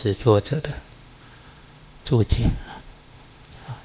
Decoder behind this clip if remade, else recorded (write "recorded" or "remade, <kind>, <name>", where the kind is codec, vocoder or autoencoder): remade, autoencoder, DAC-VAE